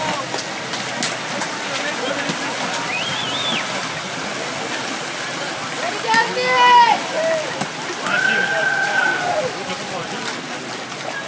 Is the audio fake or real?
real